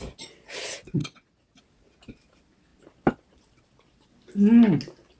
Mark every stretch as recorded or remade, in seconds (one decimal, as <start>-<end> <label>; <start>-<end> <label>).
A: 0.0-1.0 recorded; 1.0-1.6 remade; 1.6-5.2 recorded